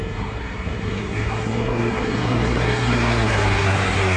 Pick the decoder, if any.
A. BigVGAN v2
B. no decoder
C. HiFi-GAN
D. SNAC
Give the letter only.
D